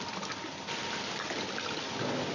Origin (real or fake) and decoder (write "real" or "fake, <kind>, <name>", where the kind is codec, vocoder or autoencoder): real